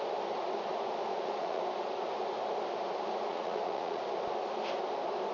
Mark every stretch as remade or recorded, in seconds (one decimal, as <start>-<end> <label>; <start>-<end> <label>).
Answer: 0.0-1.1 recorded; 1.1-1.6 remade; 1.6-3.3 recorded; 3.3-4.0 remade; 4.0-5.3 recorded